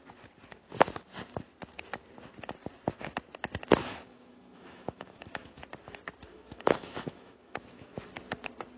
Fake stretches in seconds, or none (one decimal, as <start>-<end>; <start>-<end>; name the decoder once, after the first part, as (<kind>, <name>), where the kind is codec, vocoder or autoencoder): 3.8-5.6 (autoencoder, DAC-VAE); 6.3-7.9